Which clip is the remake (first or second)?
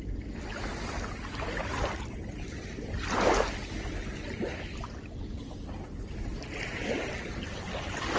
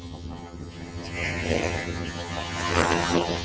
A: second